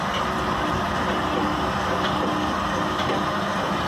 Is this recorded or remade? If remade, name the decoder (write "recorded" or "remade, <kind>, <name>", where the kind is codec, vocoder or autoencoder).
recorded